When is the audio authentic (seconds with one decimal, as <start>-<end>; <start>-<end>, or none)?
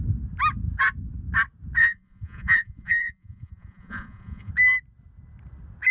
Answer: 0.0-1.8; 4.5-5.9